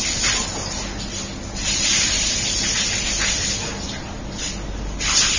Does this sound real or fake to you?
real